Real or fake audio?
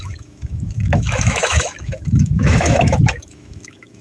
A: fake